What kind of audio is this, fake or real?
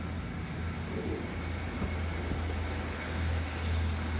real